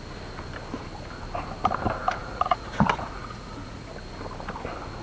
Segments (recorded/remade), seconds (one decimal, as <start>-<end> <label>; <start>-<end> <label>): 0.0-2.2 recorded; 2.2-3.9 remade; 3.9-5.0 recorded